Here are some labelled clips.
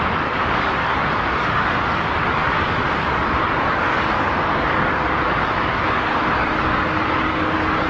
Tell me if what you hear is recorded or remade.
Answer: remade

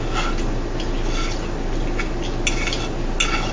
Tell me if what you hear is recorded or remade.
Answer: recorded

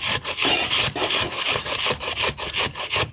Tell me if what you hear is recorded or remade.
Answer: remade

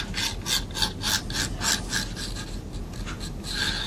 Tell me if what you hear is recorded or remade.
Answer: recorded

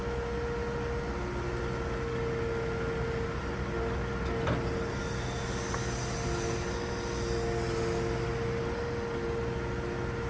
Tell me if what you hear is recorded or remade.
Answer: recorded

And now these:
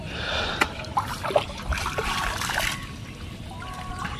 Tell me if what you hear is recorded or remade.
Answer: recorded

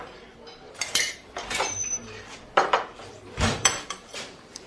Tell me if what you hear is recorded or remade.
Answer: remade